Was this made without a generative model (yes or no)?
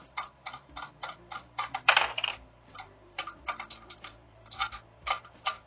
no